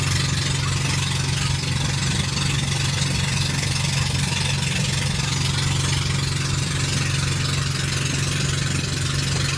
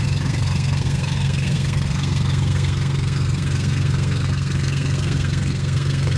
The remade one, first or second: second